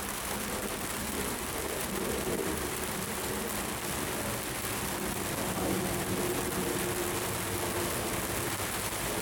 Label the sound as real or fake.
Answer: real